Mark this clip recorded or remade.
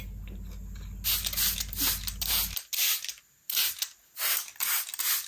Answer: recorded